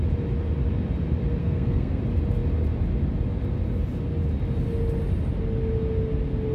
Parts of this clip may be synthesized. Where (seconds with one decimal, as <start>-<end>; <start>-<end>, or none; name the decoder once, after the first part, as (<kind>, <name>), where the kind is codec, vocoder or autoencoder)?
1.4-2.0 (codec, SNAC)